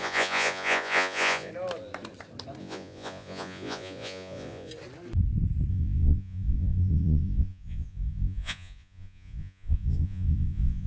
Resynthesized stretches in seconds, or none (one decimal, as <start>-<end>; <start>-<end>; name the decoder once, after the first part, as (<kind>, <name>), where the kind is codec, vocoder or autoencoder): 0.0-1.5 (vocoder, Vocos); 2.6-4.7; 5.7-10.9